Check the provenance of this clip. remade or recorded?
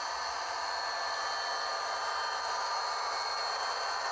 recorded